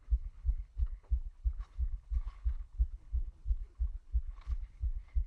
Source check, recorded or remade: remade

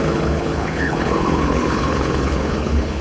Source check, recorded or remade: remade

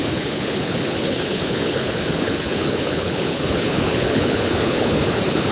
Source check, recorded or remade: remade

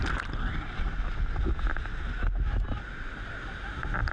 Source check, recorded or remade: recorded